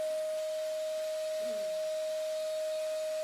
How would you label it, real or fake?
real